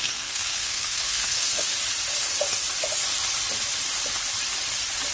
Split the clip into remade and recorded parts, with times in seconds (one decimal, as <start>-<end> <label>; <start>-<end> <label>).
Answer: 0.0-1.7 remade; 1.7-5.1 recorded